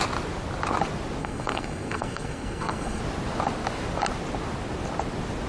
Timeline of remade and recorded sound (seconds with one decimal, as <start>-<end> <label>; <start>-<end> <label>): 0.0-1.2 recorded; 1.2-3.0 remade; 3.0-5.5 recorded